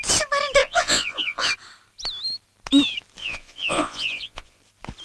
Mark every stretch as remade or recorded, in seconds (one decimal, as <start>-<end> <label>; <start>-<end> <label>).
0.0-0.6 recorded; 0.6-1.5 remade; 1.5-3.2 recorded; 3.2-4.6 remade; 4.6-5.0 recorded